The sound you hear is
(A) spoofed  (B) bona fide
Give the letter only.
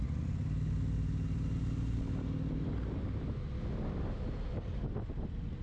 B